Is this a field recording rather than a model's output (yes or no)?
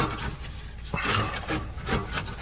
yes